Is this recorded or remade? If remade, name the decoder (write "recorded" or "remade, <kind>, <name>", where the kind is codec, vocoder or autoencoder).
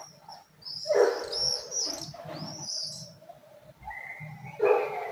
recorded